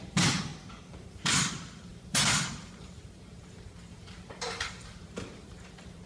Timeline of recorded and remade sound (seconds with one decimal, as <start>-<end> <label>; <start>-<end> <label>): 0.0-0.5 remade; 0.5-1.1 recorded; 1.1-6.1 remade